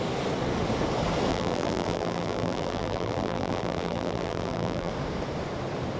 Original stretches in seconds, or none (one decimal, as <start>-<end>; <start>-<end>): 0.0-1.3; 4.9-6.0